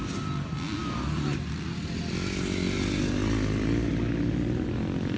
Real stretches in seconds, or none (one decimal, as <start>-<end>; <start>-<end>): 0.0-5.2